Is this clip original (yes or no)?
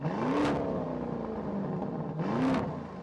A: yes